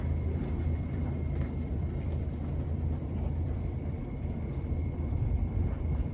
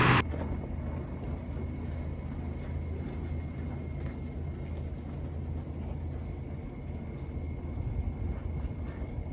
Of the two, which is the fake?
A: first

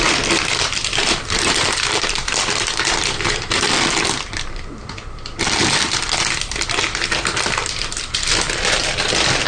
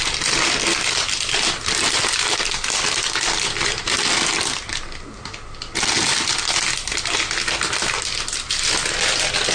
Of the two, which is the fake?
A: first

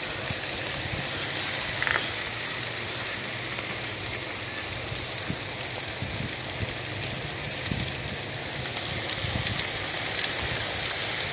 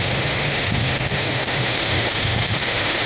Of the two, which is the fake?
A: second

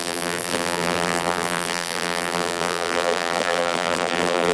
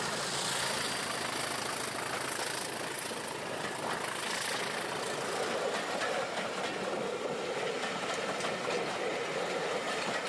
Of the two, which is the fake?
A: first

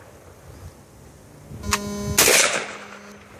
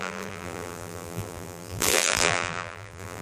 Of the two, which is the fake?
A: second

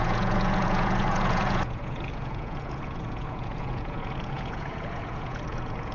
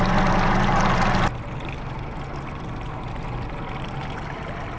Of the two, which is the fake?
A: first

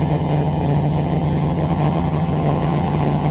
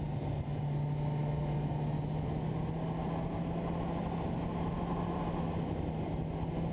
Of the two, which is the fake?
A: first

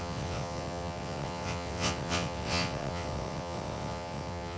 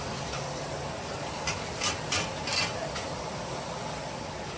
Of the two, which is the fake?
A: first